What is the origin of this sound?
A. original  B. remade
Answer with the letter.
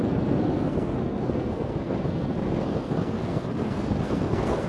B